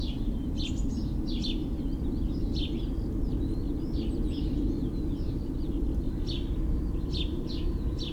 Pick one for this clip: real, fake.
real